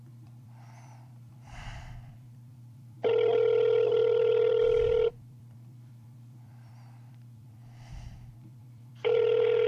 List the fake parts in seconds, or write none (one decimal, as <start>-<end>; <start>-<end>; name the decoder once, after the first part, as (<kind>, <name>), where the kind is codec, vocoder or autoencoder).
0.0-9.7 (vocoder, BigVGAN v2)